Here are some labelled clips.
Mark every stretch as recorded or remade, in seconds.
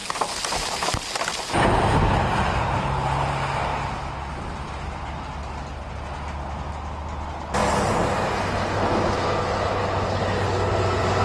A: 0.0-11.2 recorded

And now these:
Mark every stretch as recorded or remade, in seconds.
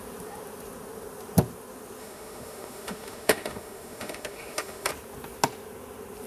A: 0.0-2.0 recorded; 2.0-4.9 remade; 4.9-6.3 recorded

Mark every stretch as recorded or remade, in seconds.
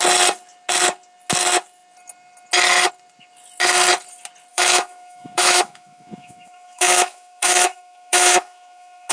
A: 0.0-4.5 recorded; 4.5-9.1 remade